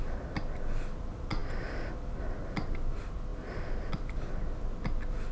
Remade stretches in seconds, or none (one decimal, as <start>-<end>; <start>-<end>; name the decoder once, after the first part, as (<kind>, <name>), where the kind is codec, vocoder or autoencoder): none